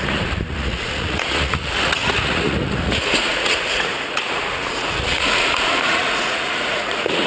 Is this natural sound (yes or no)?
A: no